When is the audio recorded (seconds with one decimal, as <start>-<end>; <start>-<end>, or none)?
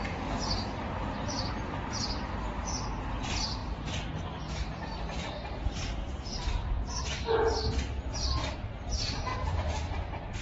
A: 0.0-9.3